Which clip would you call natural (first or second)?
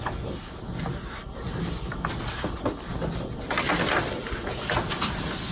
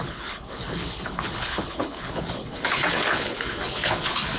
first